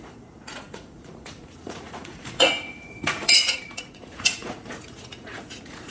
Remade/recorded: remade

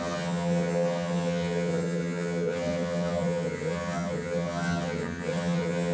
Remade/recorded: remade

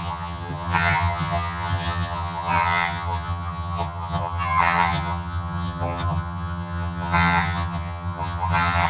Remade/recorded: remade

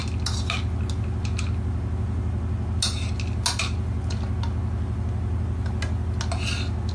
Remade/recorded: recorded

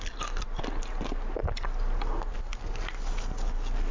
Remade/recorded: recorded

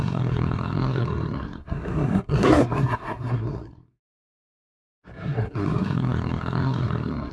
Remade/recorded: remade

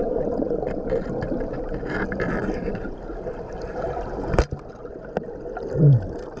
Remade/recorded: recorded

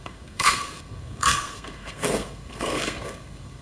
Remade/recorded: remade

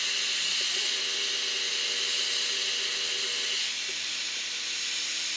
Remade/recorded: recorded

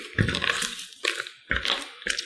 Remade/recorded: recorded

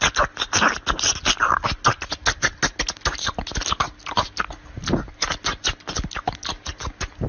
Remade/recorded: recorded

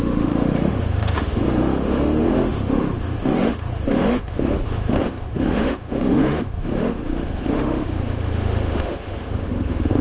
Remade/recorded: remade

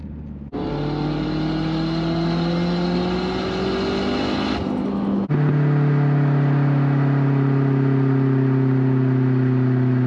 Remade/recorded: recorded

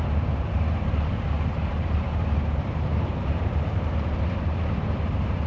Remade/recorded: remade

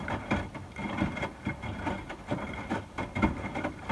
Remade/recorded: recorded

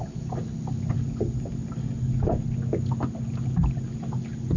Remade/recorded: recorded